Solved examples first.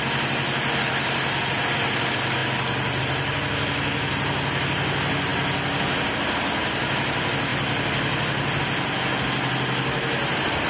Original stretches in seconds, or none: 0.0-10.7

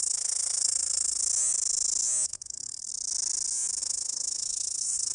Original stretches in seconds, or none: 1.2-2.3; 2.9-3.8

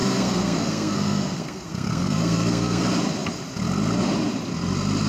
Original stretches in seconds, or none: 2.8-5.1

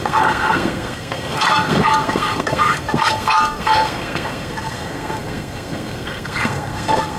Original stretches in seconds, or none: none

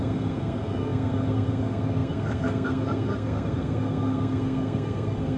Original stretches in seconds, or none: none